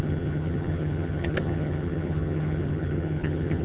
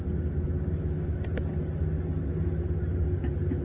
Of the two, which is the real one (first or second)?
second